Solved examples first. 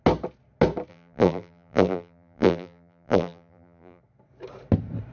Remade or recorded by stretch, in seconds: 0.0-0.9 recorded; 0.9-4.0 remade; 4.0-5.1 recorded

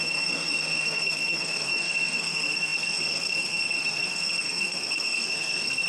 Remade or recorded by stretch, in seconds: 0.0-5.9 remade

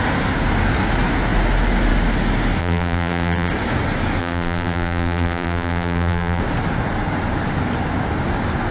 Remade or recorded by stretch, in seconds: 0.0-2.6 recorded; 2.6-3.5 remade; 3.5-4.2 recorded; 4.2-6.4 remade; 6.4-8.7 recorded

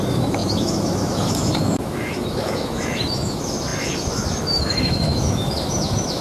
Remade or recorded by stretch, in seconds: 0.0-6.2 remade

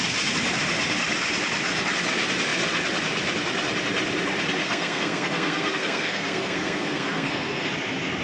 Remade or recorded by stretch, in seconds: 0.0-4.6 recorded; 4.6-7.7 remade; 7.7-8.2 recorded

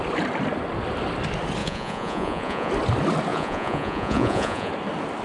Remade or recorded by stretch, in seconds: 0.0-1.6 recorded; 1.6-2.7 remade; 2.7-3.3 recorded; 3.3-4.7 remade; 4.7-5.2 recorded

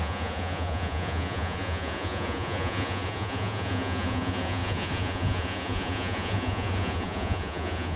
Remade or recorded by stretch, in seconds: 0.0-8.0 remade

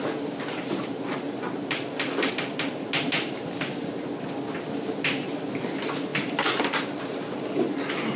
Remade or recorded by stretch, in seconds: 0.0-8.2 recorded